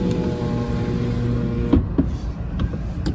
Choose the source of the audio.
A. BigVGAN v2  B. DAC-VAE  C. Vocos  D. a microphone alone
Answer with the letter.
D